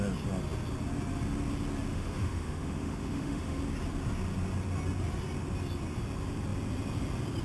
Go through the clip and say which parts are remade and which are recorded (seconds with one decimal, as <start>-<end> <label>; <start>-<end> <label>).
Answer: 0.0-1.9 recorded; 1.9-3.6 remade; 3.6-7.4 recorded